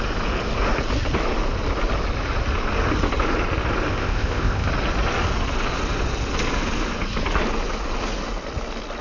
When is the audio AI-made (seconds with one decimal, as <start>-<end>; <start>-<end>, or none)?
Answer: 3.9-4.7